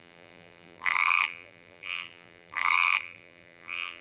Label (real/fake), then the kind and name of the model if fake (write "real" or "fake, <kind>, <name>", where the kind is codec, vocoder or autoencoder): fake, vocoder, BigVGAN v2